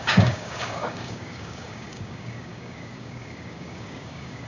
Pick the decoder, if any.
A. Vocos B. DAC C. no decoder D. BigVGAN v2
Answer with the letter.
B